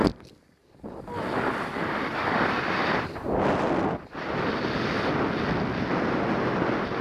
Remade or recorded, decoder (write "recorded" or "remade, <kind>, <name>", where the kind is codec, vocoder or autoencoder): recorded